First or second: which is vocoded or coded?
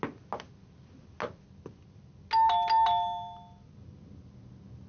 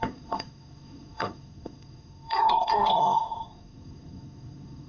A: second